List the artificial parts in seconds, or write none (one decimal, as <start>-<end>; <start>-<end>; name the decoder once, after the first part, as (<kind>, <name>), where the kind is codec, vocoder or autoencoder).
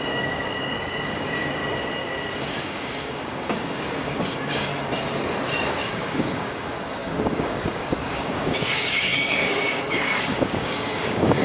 0.0-1.6 (codec, DAC); 2.4-4.7; 5.8-11.4